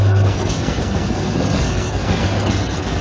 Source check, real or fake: fake